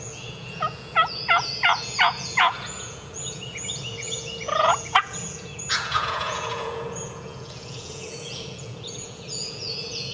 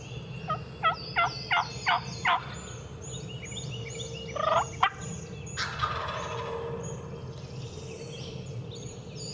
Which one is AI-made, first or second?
first